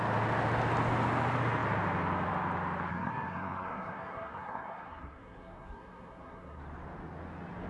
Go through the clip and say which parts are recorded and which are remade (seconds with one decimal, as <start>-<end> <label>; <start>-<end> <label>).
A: 0.0-2.9 recorded; 2.9-6.6 remade; 6.6-7.7 recorded